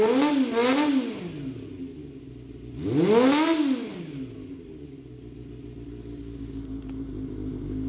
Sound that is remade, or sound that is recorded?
recorded